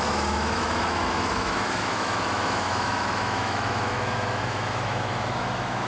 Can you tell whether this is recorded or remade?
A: remade